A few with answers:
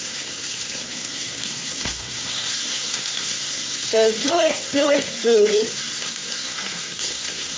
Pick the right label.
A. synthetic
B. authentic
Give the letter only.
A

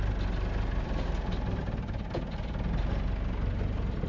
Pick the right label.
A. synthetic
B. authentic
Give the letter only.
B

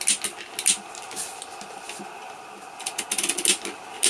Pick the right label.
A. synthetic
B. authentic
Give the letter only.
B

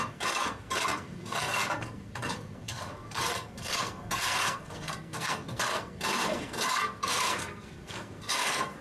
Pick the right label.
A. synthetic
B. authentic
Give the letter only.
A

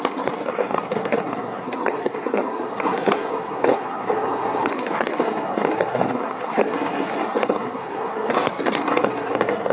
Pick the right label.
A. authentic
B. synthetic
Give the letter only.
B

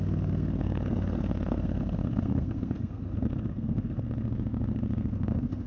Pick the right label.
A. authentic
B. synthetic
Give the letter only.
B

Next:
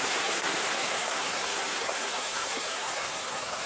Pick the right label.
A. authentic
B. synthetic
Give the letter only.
B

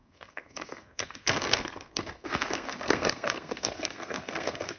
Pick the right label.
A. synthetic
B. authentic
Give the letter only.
A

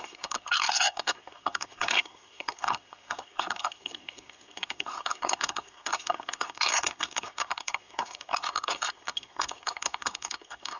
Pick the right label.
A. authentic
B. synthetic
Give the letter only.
B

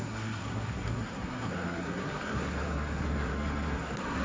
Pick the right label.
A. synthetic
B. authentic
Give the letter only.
A